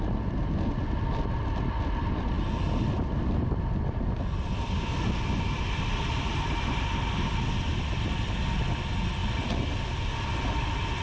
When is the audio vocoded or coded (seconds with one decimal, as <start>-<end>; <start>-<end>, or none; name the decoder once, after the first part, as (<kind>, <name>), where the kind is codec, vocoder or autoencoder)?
none